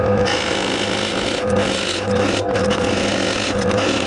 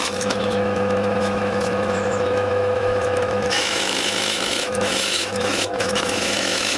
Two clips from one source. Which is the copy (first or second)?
second